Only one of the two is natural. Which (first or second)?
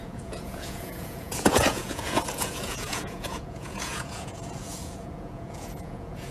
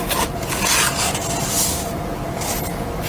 second